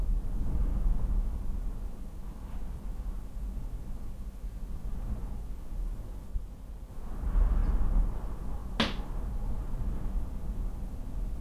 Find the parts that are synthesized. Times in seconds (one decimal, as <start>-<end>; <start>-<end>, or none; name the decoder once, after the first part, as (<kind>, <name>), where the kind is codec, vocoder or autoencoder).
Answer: 6.3-6.9 (vocoder, BigVGAN v2)